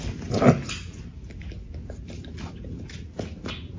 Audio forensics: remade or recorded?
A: recorded